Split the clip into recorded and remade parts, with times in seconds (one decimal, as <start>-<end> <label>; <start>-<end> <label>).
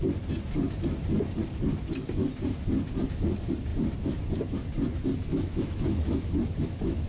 0.0-5.3 recorded; 5.3-7.1 remade